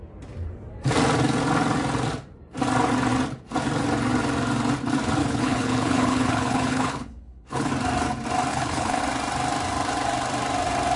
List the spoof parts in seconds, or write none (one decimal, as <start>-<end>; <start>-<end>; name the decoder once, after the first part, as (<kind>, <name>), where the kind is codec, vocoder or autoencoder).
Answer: 5.2-7.7 (codec, HILCodec); 8.5-9.0